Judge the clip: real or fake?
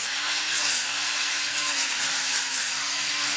fake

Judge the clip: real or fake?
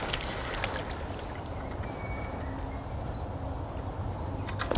real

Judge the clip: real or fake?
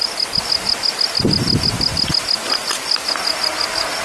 real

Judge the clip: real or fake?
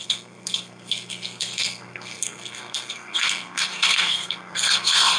fake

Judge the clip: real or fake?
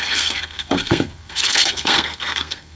fake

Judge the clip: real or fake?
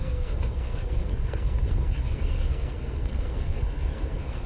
fake